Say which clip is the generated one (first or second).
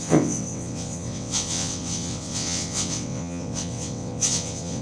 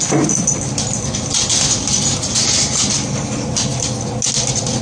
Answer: first